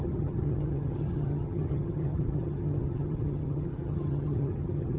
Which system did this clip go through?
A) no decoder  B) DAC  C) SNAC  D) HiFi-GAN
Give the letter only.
D